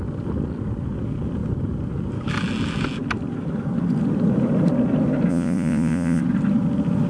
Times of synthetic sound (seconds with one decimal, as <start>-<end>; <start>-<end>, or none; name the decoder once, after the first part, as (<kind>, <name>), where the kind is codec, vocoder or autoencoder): 5.3-6.2 (vocoder, Vocos)